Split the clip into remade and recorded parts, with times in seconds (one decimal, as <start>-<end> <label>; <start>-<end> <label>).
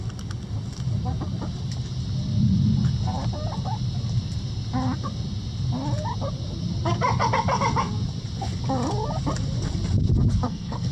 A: 0.0-10.3 recorded; 10.3-10.9 remade